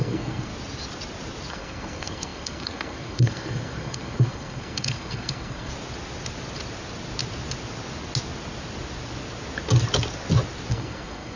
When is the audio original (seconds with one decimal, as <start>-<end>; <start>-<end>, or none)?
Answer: 0.5-1.5; 5.7-10.7